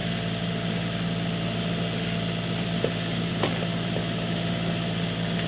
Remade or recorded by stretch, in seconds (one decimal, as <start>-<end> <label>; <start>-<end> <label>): 0.0-4.0 recorded; 4.0-4.7 remade; 4.7-5.5 recorded

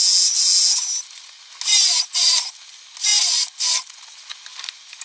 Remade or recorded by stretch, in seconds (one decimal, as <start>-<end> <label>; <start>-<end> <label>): 0.0-5.0 recorded

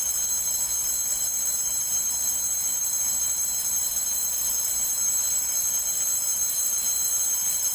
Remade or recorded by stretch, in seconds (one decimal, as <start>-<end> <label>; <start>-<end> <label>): 0.0-7.7 recorded

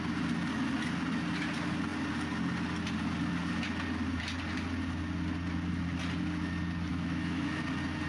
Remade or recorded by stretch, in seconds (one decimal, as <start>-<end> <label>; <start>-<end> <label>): 0.0-6.9 recorded; 6.9-7.6 remade; 7.6-8.1 recorded

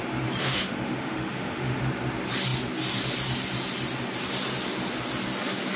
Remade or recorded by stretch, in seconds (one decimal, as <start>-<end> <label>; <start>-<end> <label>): 0.0-0.4 recorded; 0.4-1.8 remade; 1.8-5.8 recorded

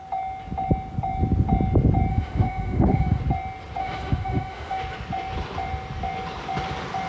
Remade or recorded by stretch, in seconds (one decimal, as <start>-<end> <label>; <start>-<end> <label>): 0.0-2.1 recorded; 2.1-3.2 remade; 3.2-3.8 recorded; 3.8-4.8 remade; 4.8-7.1 recorded